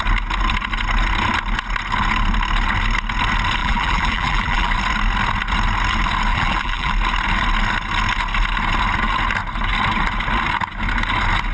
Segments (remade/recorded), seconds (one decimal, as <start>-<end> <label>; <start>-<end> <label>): 0.0-3.6 recorded; 3.6-4.7 remade; 4.7-6.3 recorded; 6.3-6.9 remade; 6.9-11.5 recorded